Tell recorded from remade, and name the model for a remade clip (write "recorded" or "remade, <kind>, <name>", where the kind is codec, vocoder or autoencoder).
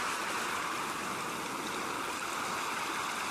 recorded